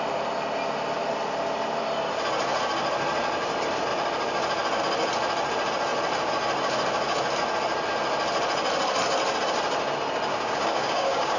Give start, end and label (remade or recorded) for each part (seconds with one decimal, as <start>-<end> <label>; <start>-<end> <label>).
0.0-10.3 recorded; 10.3-11.4 remade